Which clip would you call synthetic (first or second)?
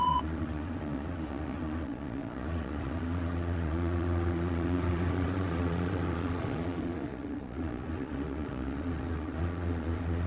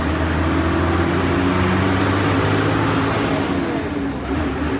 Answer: first